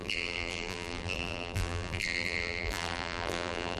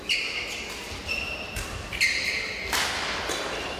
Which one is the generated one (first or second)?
first